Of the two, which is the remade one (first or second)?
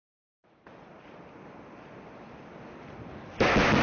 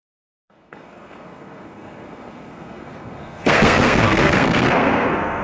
second